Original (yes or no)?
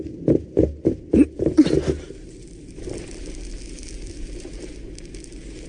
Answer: yes